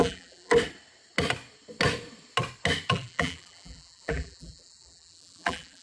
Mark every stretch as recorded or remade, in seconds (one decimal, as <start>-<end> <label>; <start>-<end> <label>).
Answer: 0.0-0.5 remade; 0.5-2.9 recorded; 2.9-5.8 remade